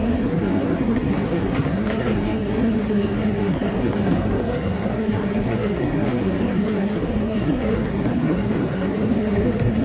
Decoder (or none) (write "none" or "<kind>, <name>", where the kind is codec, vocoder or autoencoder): codec, SNAC